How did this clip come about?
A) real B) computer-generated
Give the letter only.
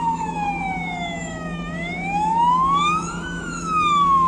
B